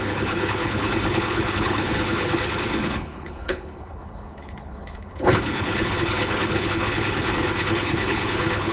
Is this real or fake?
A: fake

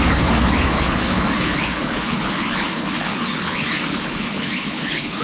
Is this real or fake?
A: fake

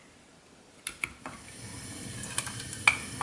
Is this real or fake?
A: real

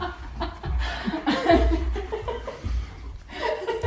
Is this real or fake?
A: real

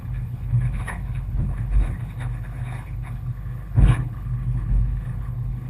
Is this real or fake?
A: fake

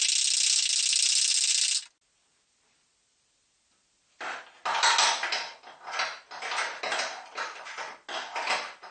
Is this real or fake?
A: real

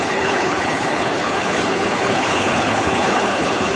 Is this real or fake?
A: fake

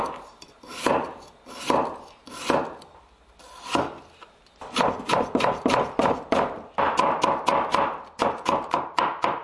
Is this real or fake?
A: real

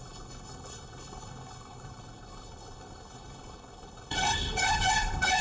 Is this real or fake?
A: fake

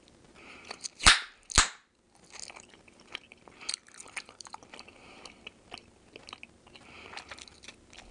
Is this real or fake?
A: real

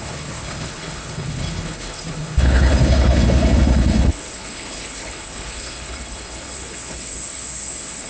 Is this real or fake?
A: fake